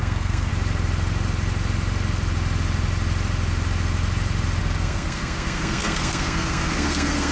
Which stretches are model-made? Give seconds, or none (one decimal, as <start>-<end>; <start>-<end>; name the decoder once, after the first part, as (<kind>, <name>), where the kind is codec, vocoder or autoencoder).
0.0-0.5 (codec, SNAC); 4.6-7.3